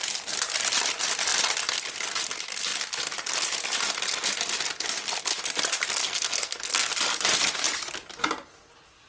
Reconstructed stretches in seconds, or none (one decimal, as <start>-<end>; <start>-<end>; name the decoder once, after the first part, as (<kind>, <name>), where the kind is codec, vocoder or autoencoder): 6.0-6.9 (codec, SNAC)